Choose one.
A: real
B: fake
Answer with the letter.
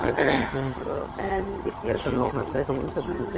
B